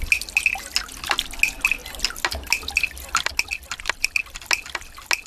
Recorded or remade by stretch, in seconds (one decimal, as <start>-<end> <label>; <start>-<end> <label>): 0.0-5.3 recorded